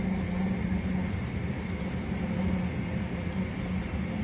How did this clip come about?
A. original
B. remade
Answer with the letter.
A